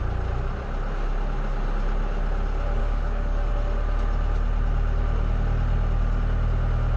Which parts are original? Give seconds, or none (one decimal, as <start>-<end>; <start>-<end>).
0.0-2.8; 3.5-7.0